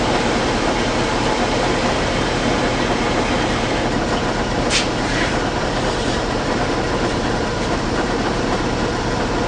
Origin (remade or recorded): remade